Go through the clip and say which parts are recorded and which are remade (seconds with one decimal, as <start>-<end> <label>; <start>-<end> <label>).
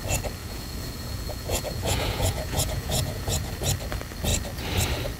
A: 0.0-0.4 recorded; 0.4-3.5 remade; 3.5-5.2 recorded